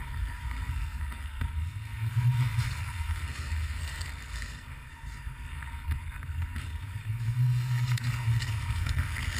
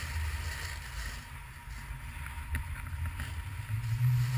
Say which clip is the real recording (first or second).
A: second